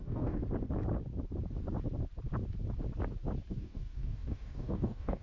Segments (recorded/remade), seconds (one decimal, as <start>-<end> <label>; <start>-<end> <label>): 0.0-0.4 remade; 0.4-3.5 recorded; 3.5-5.2 remade